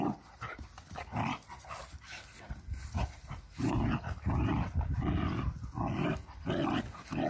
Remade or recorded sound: recorded